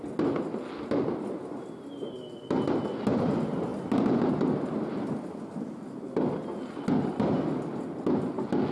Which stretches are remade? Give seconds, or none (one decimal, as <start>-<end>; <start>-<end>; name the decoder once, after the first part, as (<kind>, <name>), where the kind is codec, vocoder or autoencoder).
none